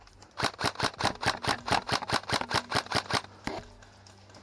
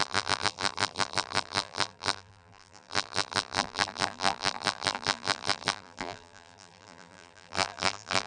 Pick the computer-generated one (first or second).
second